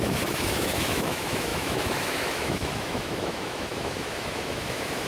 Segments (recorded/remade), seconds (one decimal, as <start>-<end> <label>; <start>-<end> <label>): 0.0-5.1 remade